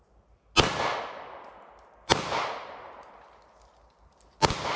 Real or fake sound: real